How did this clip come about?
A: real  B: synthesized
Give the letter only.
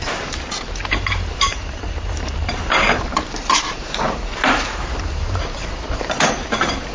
B